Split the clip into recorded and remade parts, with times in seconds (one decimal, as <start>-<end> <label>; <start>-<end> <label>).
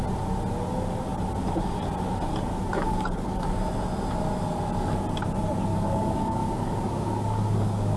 0.0-2.7 recorded; 2.7-3.6 remade; 3.6-5.7 recorded; 5.7-8.0 remade